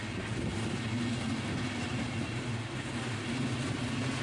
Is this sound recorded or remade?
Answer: recorded